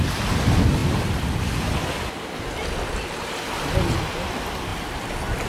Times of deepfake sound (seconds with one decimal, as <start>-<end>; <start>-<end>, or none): none